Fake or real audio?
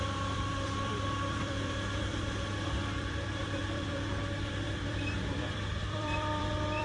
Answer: fake